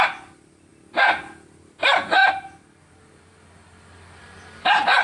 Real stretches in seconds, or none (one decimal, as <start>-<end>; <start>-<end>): 0.0-5.0